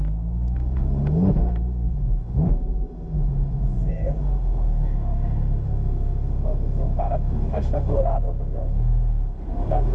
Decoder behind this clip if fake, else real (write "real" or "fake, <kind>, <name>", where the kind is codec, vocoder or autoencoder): fake, autoencoder, DAC-VAE